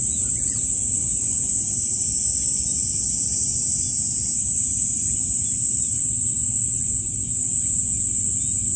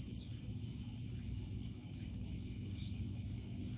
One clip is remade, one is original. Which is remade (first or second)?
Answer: second